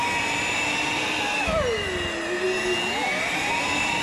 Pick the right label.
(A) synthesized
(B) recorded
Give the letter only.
B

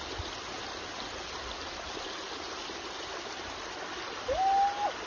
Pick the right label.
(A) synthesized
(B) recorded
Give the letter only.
B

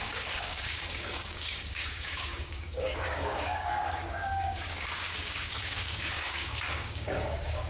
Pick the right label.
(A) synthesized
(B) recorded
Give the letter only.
A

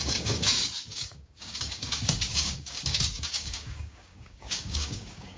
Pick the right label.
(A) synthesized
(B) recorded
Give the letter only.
A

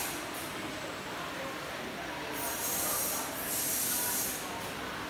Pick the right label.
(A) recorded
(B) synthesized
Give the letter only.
A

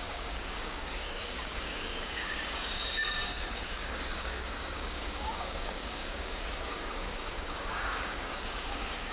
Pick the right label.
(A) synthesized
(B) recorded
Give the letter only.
A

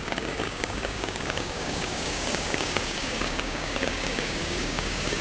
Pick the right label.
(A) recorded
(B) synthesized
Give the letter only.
B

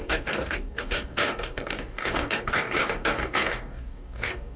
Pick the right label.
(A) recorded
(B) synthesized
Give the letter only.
B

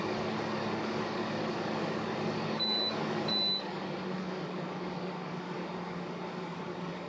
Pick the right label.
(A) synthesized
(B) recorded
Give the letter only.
A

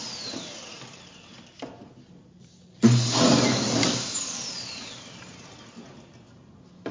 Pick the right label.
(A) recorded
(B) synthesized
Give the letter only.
A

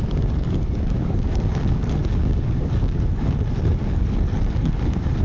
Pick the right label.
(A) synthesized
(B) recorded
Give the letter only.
A